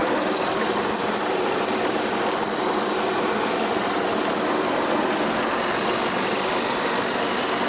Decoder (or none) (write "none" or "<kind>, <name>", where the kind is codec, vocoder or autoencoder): none